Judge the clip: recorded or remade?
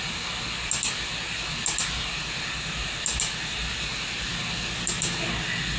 recorded